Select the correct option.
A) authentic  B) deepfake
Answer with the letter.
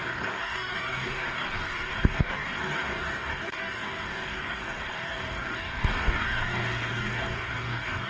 B